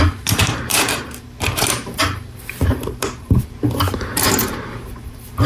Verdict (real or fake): fake